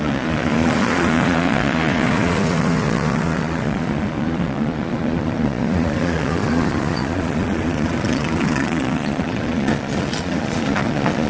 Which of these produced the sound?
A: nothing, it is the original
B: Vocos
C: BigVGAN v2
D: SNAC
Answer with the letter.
B